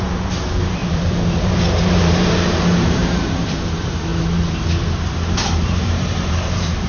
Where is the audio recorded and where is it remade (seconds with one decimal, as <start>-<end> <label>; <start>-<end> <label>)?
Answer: 0.0-4.1 remade; 4.1-5.8 recorded; 5.8-6.9 remade